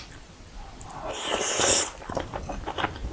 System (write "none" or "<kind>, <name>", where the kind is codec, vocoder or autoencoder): none